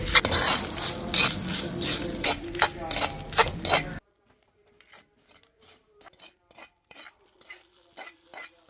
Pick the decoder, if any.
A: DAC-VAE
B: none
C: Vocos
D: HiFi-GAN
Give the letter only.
B